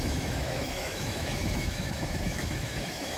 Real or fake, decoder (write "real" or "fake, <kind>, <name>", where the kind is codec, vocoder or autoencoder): fake, autoencoder, DAC-VAE